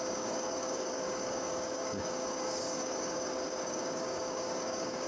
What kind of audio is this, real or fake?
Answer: fake